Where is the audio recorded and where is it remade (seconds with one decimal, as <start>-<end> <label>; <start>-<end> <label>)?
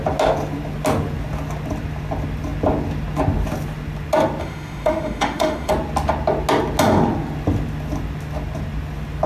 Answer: 0.0-4.4 recorded; 4.4-5.7 remade; 5.7-9.3 recorded